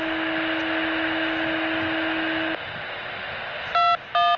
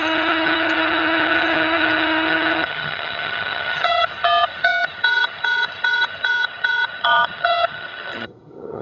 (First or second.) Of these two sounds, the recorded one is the first